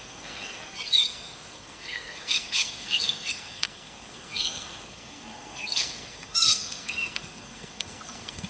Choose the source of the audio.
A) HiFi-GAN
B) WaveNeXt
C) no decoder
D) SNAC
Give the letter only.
D